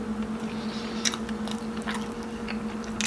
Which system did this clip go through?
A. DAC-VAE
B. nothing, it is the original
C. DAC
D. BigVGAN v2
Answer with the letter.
B